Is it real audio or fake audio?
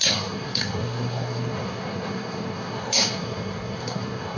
fake